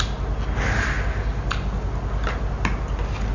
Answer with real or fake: real